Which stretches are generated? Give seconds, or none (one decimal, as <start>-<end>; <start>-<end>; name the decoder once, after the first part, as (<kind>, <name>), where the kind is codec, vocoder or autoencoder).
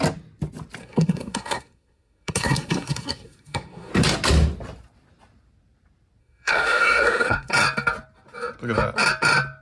0.8-3.9 (codec, SNAC); 6.2-7.5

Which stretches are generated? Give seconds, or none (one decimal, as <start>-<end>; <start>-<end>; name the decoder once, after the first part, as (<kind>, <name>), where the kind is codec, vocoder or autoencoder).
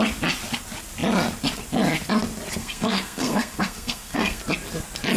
2.6-4.4 (codec, SNAC)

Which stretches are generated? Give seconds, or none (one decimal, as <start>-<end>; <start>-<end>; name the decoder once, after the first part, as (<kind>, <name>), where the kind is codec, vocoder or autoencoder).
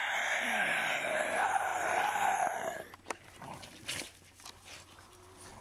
none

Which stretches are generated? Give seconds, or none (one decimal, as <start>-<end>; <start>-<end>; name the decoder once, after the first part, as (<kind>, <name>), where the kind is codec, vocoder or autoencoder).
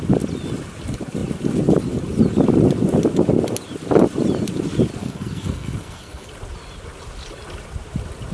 5.0-6.3 (codec, SNAC)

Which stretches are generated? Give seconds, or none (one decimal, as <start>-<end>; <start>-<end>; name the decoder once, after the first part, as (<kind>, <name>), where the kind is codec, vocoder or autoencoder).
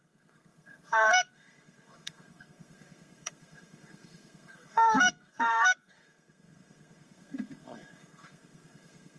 0.0-9.2 (codec, SNAC)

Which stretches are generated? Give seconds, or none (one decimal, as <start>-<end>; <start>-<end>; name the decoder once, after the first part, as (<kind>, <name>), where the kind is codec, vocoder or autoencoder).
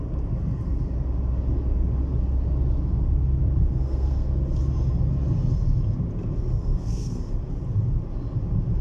3.7-4.3 (codec, SNAC); 6.6-7.2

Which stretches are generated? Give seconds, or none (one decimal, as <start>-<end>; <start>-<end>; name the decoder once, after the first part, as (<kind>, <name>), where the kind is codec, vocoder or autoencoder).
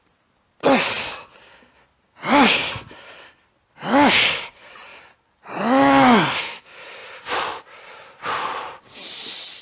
none